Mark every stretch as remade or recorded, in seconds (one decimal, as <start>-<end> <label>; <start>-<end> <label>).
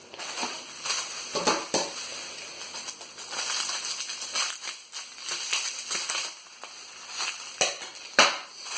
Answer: 0.0-8.8 recorded